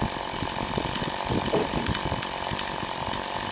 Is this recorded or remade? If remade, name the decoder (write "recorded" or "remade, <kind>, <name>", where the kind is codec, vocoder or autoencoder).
recorded